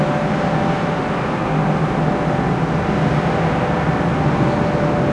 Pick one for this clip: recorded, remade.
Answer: recorded